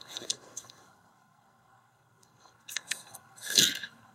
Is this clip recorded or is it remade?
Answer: remade